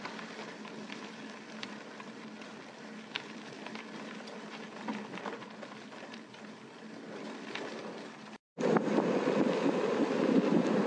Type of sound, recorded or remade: recorded